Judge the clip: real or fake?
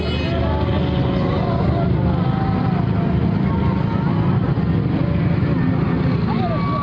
real